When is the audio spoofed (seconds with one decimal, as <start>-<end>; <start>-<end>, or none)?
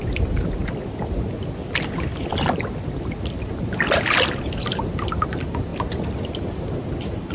none